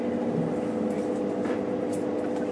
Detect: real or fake real